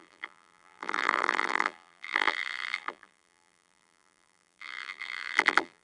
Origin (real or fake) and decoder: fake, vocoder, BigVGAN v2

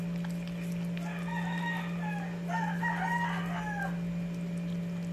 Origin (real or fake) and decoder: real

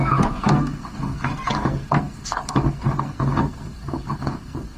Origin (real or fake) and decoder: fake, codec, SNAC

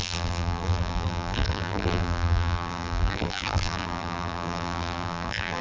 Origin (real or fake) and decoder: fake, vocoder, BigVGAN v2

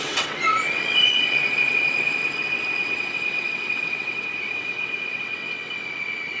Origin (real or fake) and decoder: fake, vocoder, WaveNeXt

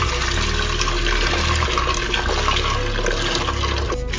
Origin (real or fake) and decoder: real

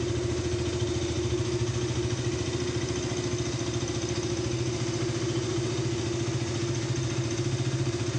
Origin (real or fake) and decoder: real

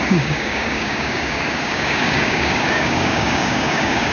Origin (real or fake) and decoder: fake, codec, DAC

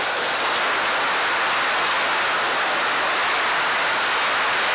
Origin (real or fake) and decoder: real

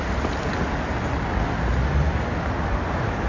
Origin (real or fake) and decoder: real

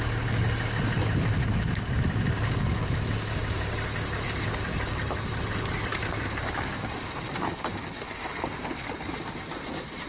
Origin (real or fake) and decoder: real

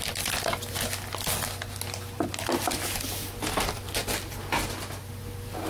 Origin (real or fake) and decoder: real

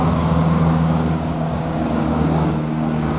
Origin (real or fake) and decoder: fake, codec, DAC